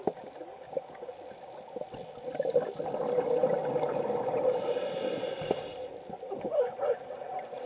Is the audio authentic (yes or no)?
yes